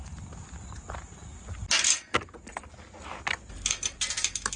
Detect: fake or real real